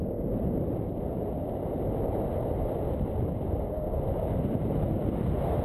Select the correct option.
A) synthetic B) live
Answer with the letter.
B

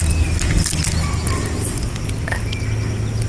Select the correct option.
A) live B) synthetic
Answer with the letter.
A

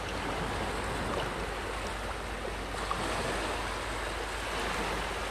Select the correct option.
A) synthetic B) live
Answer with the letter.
B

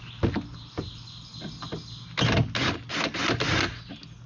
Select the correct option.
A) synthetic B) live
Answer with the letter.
B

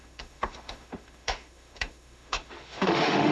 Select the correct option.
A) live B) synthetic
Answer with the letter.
B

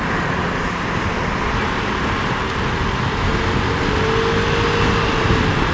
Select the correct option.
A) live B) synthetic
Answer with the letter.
A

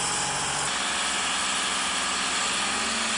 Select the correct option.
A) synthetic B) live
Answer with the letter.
B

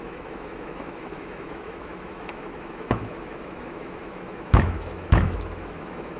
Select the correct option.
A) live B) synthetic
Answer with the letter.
B